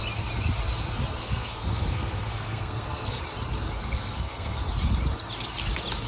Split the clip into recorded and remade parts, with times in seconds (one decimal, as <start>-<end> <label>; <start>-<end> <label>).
0.0-1.2 recorded; 1.2-3.2 remade; 3.2-3.8 recorded; 3.8-4.6 remade; 4.6-6.1 recorded